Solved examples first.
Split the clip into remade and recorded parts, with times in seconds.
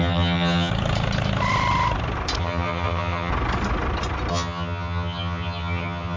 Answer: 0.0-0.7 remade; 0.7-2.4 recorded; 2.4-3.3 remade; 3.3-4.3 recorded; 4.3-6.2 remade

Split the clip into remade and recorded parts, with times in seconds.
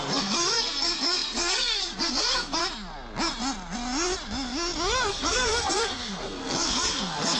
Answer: 0.0-2.6 remade; 2.6-5.1 recorded; 5.1-7.4 remade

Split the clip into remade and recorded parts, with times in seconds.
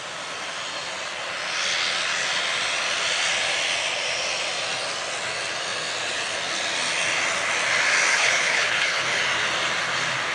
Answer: 0.0-8.1 recorded; 8.1-9.2 remade; 9.2-10.3 recorded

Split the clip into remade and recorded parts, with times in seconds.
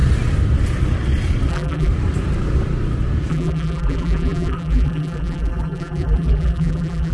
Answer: 0.0-1.5 recorded; 1.5-1.9 remade; 1.9-3.3 recorded; 3.3-7.1 remade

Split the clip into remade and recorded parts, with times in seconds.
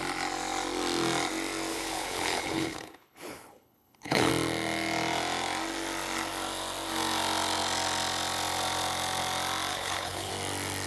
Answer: 0.0-1.7 recorded; 1.7-4.3 remade; 4.3-9.7 recorded; 9.7-10.3 remade; 10.3-10.9 recorded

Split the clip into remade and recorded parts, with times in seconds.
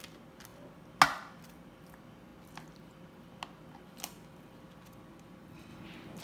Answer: 0.0-6.2 recorded